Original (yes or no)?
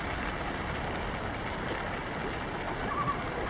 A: yes